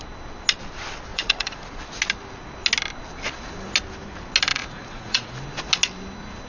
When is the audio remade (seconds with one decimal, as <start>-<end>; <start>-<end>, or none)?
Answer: 1.1-2.0; 4.5-5.3